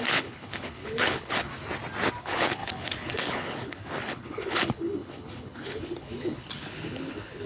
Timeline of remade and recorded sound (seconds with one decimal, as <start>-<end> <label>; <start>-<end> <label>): 0.0-1.5 remade; 1.5-2.2 recorded; 2.2-7.5 remade